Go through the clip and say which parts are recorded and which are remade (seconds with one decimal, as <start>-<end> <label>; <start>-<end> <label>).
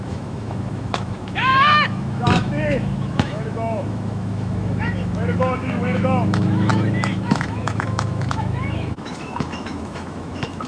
0.0-10.7 remade